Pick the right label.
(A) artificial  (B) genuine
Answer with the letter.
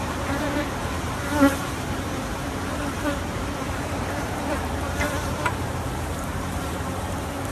A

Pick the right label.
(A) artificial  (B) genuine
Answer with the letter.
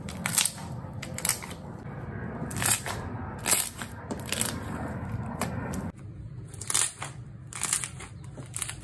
A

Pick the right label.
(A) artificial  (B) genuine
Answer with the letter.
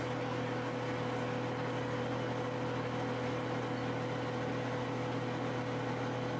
B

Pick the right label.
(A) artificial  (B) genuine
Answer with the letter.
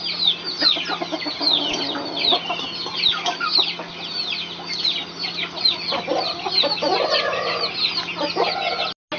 B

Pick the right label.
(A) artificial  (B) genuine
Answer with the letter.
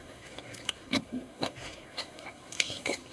A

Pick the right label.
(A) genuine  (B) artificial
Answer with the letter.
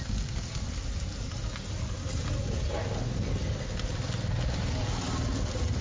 A